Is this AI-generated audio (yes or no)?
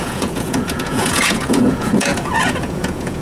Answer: yes